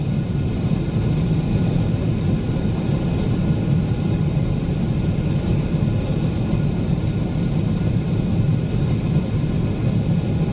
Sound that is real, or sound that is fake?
real